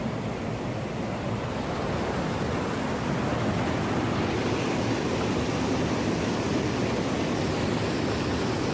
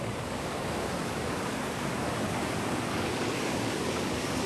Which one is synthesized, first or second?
second